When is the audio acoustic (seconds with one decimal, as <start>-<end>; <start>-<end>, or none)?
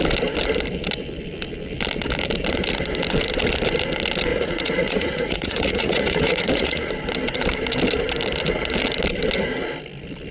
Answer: 0.0-4.3; 6.9-10.3